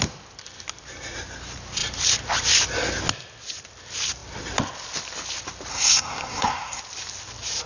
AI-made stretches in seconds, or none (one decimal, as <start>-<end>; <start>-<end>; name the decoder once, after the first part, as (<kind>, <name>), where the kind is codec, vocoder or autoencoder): 5.7-6.8 (codec, SNAC)